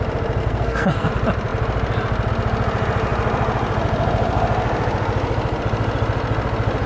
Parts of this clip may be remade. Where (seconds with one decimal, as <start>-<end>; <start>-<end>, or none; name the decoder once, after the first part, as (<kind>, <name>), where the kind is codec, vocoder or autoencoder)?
0.4-1.1 (codec, SNAC)